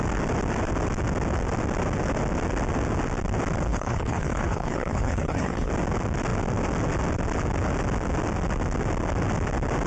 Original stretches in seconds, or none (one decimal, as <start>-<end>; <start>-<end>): 0.0-3.7; 5.7-9.9